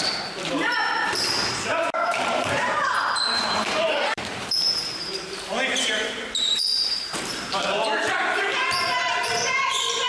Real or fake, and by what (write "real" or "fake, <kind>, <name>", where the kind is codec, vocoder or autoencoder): fake, vocoder, BigVGAN v2